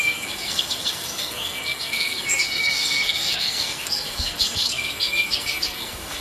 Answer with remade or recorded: remade